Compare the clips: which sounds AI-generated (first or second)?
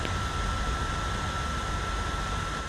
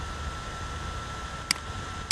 first